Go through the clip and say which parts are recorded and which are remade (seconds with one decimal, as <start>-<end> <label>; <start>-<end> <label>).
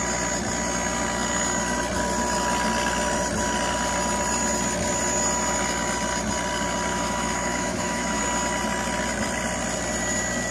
0.0-6.9 recorded; 6.9-8.2 remade; 8.2-10.5 recorded